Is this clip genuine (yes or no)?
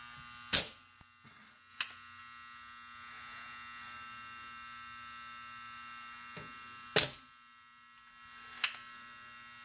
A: yes